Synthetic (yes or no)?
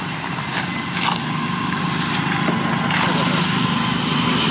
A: no